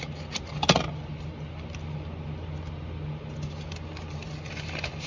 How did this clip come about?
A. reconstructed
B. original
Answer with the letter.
B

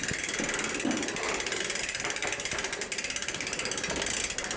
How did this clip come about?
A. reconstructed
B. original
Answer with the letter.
B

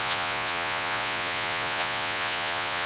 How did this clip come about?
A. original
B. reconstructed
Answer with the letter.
B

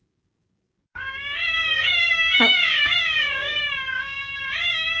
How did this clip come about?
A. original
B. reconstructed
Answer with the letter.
B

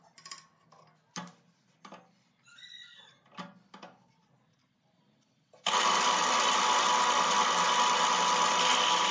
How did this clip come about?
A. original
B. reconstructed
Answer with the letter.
A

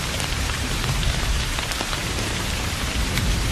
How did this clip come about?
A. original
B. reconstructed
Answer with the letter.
B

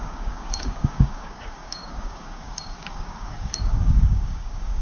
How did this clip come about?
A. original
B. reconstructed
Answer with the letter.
B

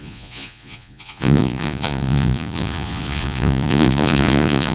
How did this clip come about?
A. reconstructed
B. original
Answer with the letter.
A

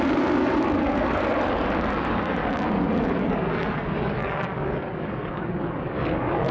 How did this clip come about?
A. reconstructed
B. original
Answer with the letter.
A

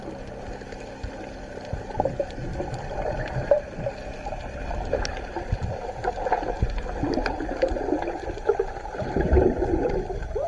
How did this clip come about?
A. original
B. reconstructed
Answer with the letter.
A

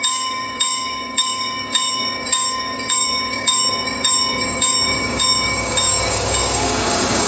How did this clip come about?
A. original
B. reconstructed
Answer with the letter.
B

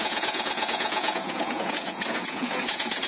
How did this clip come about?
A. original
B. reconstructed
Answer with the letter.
B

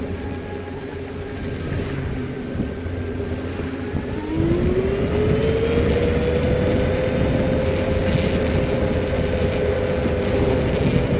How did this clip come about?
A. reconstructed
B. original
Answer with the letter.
B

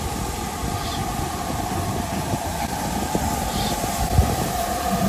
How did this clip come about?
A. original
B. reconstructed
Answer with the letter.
A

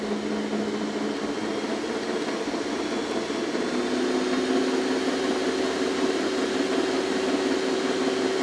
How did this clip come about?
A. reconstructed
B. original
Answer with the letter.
B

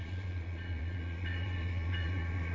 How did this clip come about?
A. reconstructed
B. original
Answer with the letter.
A